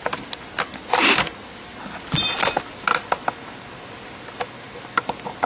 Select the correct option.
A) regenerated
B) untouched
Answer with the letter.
B